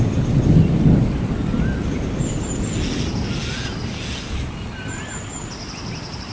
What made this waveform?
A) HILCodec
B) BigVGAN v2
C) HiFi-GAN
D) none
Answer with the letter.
D